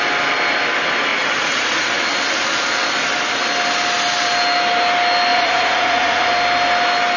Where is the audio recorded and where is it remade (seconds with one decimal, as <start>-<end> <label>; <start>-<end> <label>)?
0.0-1.1 recorded; 1.1-2.0 remade; 2.0-5.3 recorded; 5.3-6.3 remade; 6.3-7.2 recorded